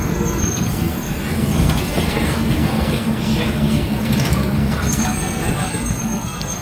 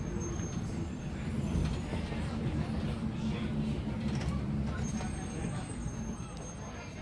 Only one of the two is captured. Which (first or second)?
second